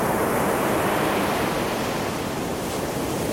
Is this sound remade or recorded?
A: recorded